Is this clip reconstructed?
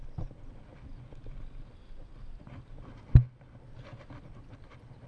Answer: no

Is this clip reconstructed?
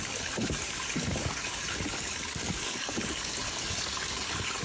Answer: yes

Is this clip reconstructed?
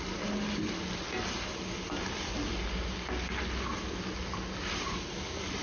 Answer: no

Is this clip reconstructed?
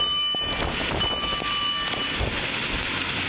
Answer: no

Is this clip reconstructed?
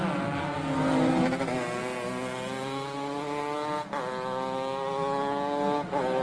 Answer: no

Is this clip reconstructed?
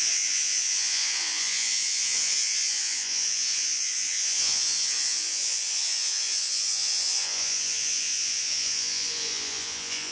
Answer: yes